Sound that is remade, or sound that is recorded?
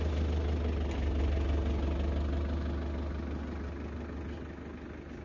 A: recorded